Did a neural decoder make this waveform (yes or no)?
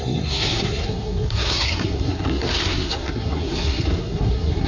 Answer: yes